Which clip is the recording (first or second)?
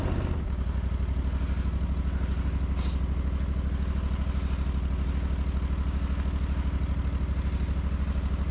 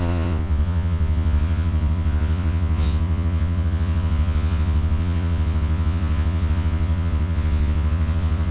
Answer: first